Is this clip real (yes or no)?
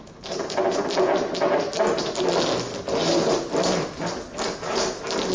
yes